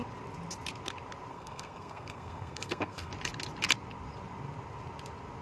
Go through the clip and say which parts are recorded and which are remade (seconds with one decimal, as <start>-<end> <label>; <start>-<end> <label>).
0.0-1.3 recorded; 1.3-3.1 remade; 3.1-5.4 recorded